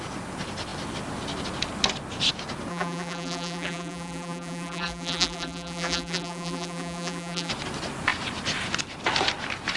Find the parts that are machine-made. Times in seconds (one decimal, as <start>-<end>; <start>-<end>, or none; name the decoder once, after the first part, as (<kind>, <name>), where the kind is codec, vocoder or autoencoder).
2.7-7.5 (vocoder, BigVGAN v2)